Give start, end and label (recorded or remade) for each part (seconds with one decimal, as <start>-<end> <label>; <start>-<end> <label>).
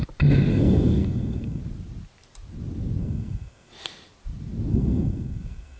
0.0-0.5 recorded; 0.5-1.6 remade; 1.6-3.0 recorded; 3.0-3.7 remade; 3.7-4.7 recorded; 4.7-5.8 remade